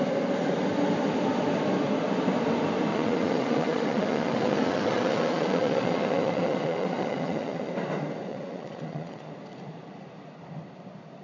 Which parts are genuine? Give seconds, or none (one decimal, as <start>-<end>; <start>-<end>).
0.0-2.9; 7.7-8.3; 9.3-11.2

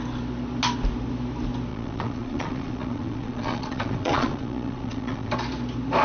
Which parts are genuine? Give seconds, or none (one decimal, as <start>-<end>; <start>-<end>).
0.0-1.7; 5.3-6.0

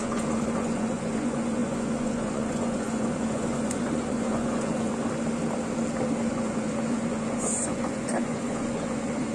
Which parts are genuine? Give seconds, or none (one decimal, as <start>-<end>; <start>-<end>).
4.9-6.3

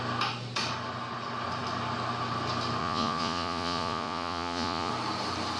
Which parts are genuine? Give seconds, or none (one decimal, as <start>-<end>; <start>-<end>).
0.0-2.8; 4.9-5.6

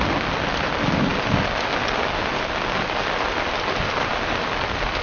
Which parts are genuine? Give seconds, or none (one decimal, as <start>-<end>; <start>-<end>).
0.0-5.0

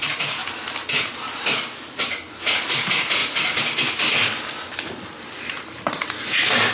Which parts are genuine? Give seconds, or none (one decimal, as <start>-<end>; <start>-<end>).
0.0-6.7